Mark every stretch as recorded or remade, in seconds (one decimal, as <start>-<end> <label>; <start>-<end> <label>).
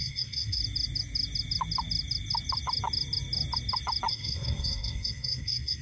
0.0-0.6 remade; 0.6-4.1 recorded; 4.1-5.8 remade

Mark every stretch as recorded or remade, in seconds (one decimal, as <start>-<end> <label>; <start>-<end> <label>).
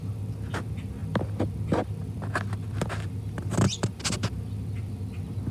0.0-5.5 recorded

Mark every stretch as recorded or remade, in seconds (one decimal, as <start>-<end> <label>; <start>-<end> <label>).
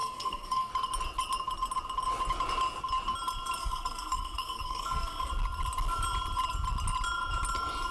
0.0-0.7 remade; 0.7-3.6 recorded; 3.6-5.3 remade; 5.3-7.9 recorded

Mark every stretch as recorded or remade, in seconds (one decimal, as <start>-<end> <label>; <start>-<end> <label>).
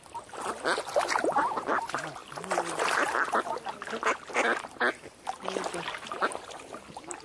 0.0-7.2 recorded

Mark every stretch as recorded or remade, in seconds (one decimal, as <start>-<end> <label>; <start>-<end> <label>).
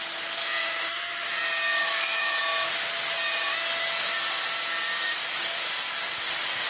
0.0-0.6 recorded; 0.6-1.4 remade; 1.4-1.8 recorded; 1.8-2.4 remade; 2.4-6.7 recorded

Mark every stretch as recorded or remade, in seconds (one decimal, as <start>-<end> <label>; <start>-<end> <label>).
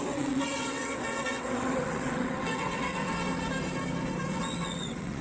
0.0-3.3 remade; 3.3-4.3 recorded; 4.3-5.2 remade